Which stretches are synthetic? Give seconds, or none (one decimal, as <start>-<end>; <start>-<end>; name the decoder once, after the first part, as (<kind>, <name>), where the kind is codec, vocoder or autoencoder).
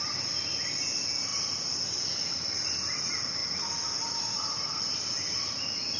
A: none